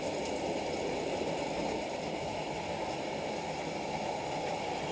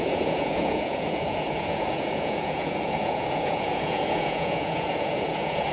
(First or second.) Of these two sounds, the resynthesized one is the second